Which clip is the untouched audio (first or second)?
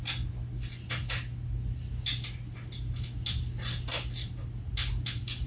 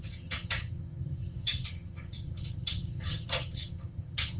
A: first